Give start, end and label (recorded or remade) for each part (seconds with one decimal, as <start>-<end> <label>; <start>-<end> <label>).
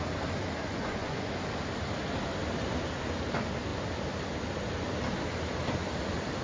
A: 0.0-0.6 recorded; 0.6-1.3 remade; 1.3-6.4 recorded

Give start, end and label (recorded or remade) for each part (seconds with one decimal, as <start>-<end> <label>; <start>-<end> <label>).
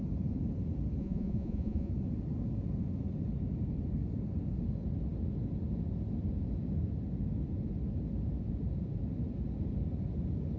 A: 0.0-1.0 recorded; 1.0-1.9 remade; 1.9-10.6 recorded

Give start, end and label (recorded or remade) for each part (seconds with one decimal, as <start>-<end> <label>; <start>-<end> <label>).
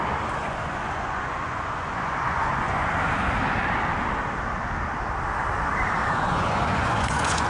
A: 0.0-0.4 recorded; 0.4-2.9 remade; 2.9-6.0 recorded; 6.0-7.5 remade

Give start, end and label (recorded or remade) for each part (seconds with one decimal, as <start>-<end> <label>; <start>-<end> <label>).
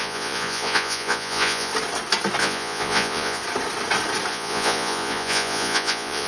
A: 0.0-1.7 remade; 1.7-2.4 recorded; 2.4-3.4 remade; 3.4-4.3 recorded; 4.3-6.3 remade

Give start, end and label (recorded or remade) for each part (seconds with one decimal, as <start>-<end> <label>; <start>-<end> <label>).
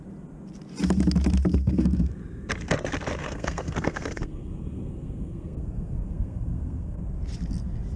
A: 0.0-1.5 recorded; 1.5-2.1 remade; 2.1-3.2 recorded; 3.2-7.0 remade; 7.0-8.0 recorded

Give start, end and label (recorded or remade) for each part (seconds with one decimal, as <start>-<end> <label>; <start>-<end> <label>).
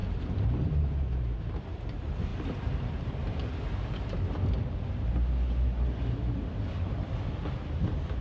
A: 0.0-0.7 remade; 0.7-8.2 recorded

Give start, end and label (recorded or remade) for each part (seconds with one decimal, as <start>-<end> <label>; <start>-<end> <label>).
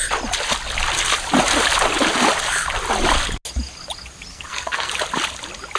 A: 0.0-4.3 recorded; 4.3-4.9 remade; 4.9-5.8 recorded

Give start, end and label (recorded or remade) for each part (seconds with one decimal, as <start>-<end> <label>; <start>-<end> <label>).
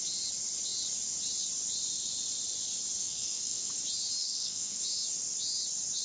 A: 0.0-3.0 recorded; 3.0-3.7 remade; 3.7-4.2 recorded; 4.2-4.8 remade; 4.8-6.0 recorded